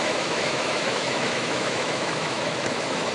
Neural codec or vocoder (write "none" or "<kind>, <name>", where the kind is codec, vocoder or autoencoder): autoencoder, DAC-VAE